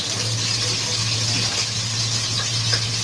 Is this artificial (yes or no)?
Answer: no